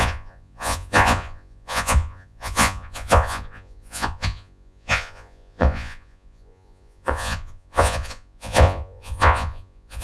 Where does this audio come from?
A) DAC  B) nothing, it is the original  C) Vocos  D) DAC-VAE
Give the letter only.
C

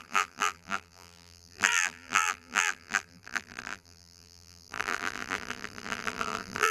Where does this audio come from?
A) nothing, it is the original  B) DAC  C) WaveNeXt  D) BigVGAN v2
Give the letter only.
D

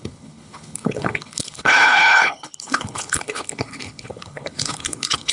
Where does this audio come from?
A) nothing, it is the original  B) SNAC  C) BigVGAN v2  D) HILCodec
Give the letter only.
D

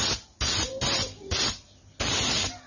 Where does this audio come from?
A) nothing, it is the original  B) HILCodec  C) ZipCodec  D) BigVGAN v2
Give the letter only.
A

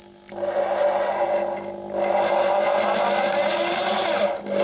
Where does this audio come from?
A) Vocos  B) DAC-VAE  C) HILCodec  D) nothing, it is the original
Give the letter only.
D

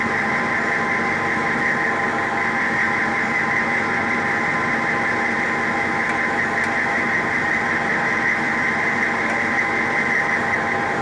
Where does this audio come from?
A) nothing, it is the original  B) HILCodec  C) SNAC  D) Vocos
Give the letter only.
A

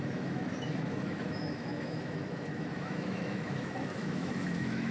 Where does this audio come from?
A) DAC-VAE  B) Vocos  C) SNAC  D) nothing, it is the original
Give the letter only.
A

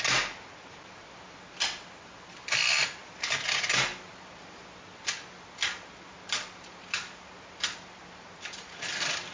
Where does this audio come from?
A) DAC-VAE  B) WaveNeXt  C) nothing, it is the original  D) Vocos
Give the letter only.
C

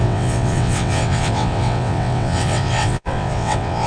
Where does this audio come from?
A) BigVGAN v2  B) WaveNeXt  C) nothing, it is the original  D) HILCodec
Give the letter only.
B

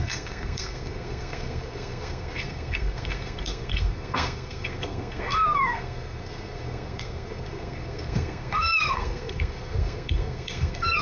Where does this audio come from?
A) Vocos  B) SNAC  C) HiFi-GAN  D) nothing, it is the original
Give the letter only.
B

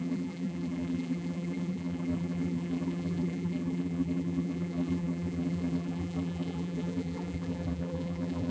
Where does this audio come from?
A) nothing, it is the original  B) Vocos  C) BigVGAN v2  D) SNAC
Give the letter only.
C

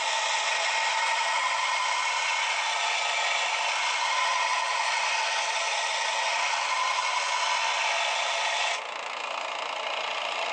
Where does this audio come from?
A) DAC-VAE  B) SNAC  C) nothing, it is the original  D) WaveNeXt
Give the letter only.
C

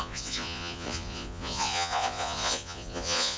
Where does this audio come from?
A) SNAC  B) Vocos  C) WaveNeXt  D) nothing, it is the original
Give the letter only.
B